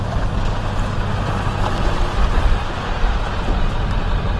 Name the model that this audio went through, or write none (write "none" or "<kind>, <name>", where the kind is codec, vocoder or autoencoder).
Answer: none